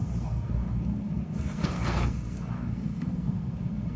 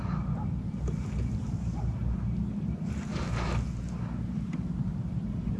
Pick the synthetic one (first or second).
first